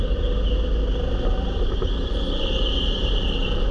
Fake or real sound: real